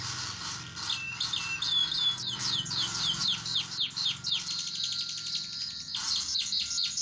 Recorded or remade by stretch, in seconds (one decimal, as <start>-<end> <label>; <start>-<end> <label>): 0.0-7.0 recorded